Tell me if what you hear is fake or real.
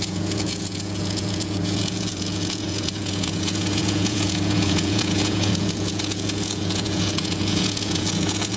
fake